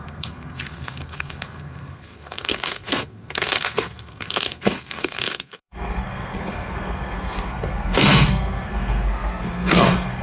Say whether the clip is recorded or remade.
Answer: remade